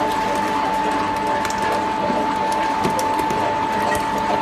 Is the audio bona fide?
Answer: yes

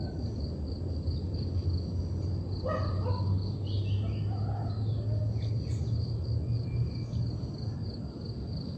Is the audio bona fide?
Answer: yes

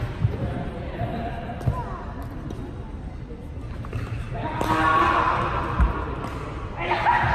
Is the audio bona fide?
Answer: yes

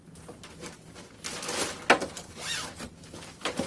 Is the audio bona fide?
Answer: yes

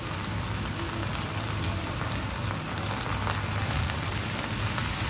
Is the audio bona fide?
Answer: yes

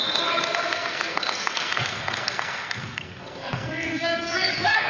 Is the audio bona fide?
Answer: no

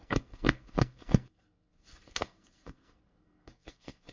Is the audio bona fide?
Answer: no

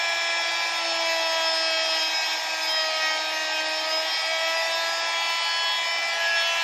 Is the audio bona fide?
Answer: yes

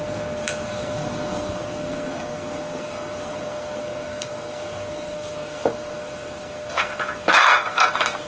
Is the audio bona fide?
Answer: no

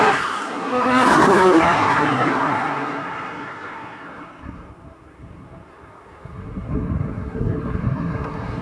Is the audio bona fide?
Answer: no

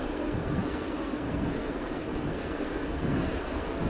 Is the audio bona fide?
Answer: no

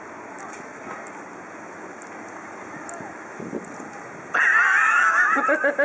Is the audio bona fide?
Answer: yes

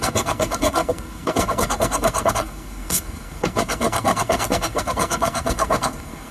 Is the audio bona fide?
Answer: no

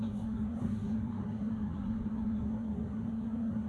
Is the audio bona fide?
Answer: no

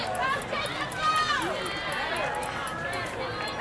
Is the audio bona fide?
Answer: yes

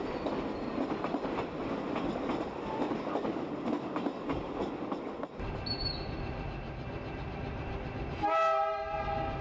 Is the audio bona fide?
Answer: yes